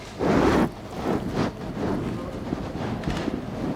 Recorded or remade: recorded